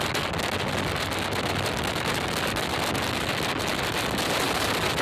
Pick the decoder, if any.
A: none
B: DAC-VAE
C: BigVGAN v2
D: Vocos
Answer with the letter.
A